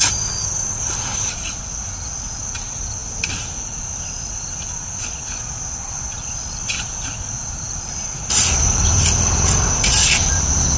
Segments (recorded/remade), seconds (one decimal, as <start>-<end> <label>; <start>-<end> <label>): 0.0-10.8 recorded